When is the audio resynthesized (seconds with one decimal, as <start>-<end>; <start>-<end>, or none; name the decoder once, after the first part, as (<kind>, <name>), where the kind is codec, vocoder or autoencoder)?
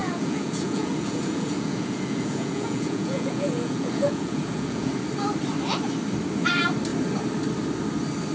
0.0-4.9 (vocoder, Vocos)